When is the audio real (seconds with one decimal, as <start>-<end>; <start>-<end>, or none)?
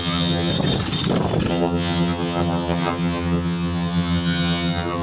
0.5-1.5